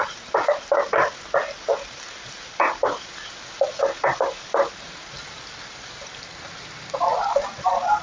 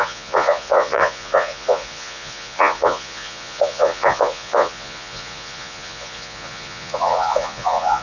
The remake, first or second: second